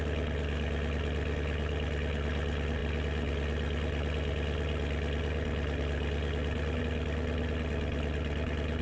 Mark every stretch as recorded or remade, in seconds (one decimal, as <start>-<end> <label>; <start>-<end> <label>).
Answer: 0.0-8.8 recorded